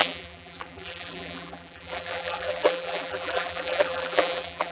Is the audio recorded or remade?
remade